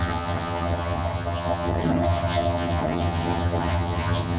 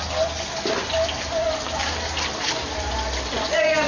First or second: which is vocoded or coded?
first